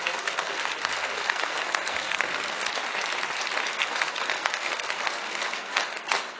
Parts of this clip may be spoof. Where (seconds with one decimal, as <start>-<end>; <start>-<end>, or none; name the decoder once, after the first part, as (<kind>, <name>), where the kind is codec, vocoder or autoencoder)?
0.0-2.6 (codec, SNAC); 3.7-6.4